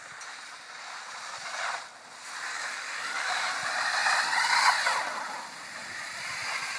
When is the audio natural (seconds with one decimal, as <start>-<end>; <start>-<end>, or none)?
0.0-2.5; 3.5-6.8